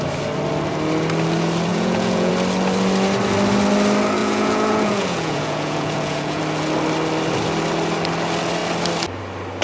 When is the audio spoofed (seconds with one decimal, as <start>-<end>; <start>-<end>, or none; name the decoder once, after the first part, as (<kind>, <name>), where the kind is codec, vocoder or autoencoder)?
1.7-2.3 (vocoder, Vocos); 4.2-6.4